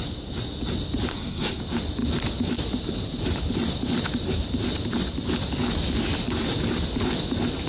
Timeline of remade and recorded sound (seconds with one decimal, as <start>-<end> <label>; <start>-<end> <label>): 0.0-1.1 recorded; 1.1-1.6 remade; 1.6-7.7 recorded